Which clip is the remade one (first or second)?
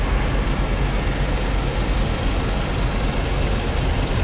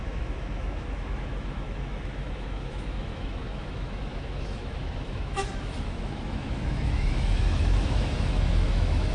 second